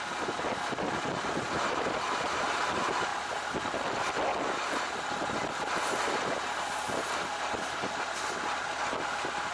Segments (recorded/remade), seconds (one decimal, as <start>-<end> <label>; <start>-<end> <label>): 0.0-9.5 recorded